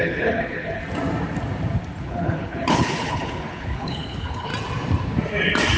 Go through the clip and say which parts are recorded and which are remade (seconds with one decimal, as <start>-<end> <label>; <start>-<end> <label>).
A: 0.0-0.8 remade; 0.8-2.0 recorded; 2.0-4.5 remade; 4.5-5.8 recorded